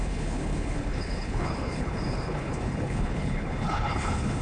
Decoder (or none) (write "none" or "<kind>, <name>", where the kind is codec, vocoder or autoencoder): codec, HILCodec